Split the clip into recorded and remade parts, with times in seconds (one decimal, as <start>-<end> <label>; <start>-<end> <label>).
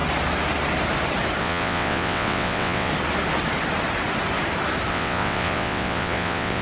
0.0-1.4 recorded; 1.4-2.9 remade; 2.9-4.9 recorded; 4.9-6.6 remade